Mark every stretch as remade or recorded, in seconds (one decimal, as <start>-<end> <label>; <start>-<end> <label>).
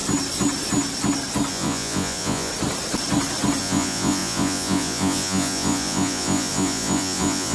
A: 0.0-1.5 recorded; 1.5-2.5 remade; 2.5-3.6 recorded; 3.6-7.5 remade